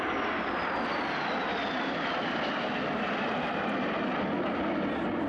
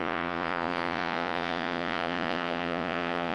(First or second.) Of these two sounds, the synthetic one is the second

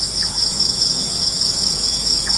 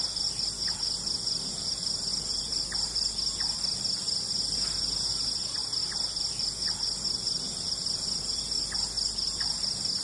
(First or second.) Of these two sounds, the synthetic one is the first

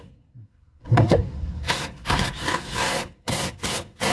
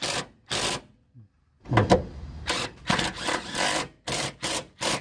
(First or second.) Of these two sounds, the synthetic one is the first